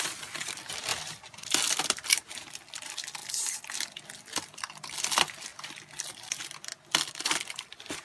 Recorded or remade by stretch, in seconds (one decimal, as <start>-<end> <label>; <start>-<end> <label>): 0.0-8.0 recorded